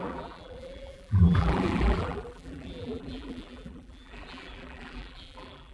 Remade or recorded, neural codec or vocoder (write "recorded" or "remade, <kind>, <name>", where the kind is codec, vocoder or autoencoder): remade, vocoder, BigVGAN v2